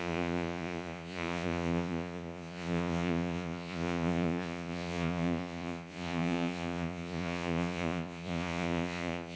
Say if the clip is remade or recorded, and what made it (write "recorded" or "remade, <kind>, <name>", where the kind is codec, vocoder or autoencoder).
remade, vocoder, Vocos